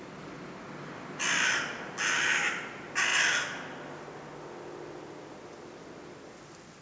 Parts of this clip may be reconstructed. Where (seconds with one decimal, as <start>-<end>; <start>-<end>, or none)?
none